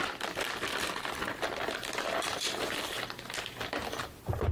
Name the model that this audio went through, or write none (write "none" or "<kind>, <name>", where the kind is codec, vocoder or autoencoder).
none